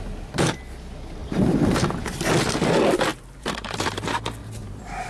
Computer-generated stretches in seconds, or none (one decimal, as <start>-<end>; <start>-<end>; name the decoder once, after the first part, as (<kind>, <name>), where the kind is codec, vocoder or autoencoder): 1.2-1.8 (vocoder, BigVGAN v2); 3.1-4.0; 4.4-5.1